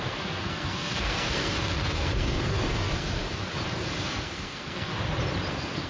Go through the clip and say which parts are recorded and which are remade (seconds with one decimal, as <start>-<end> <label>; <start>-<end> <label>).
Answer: 0.0-3.2 remade; 3.2-4.0 recorded; 4.0-4.9 remade; 4.9-5.5 recorded; 5.5-5.9 remade